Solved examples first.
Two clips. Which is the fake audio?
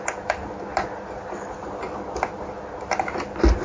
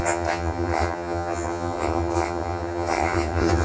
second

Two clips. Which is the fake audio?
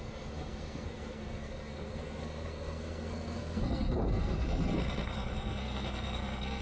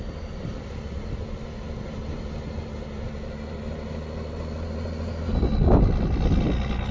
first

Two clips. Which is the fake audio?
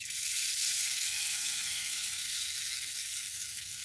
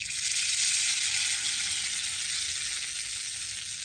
first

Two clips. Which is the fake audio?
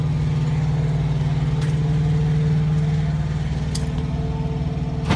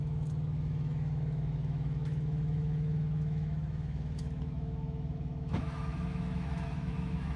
second